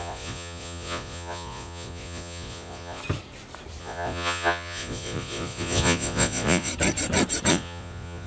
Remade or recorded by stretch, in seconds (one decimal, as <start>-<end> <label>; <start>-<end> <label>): 0.0-3.0 remade; 3.0-3.8 recorded; 3.8-6.7 remade; 6.7-7.5 recorded; 7.5-8.3 remade

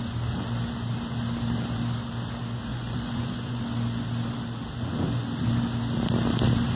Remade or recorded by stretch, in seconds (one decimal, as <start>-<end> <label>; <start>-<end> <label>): 0.0-2.7 recorded; 2.7-3.6 remade; 3.6-6.8 recorded